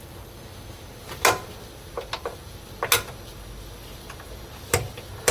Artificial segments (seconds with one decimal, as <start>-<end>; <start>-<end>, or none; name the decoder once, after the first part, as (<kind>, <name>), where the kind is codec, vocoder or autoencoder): none